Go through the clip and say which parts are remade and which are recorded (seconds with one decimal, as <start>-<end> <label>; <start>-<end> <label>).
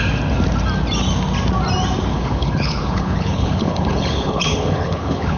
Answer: 0.0-2.1 recorded; 2.1-5.4 remade